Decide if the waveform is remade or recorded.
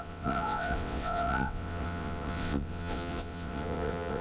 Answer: remade